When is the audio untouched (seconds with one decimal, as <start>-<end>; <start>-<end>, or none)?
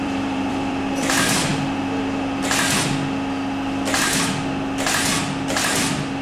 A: 1.5-5.2